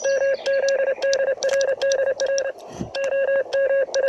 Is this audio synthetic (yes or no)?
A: no